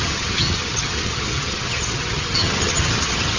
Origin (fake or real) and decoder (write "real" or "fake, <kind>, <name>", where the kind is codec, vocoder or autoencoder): fake, vocoder, HiFi-GAN